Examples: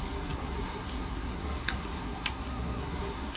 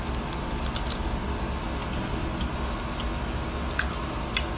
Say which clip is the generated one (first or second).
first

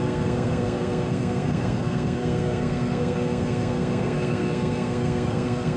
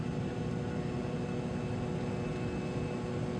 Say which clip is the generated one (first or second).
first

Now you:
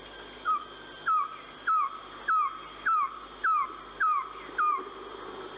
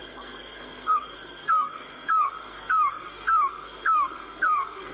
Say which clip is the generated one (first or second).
second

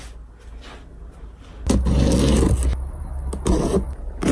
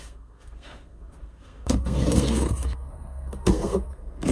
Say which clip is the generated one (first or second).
second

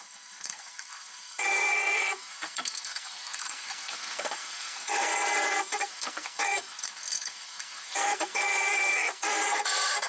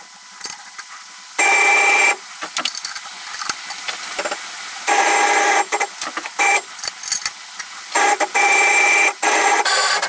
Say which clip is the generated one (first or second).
first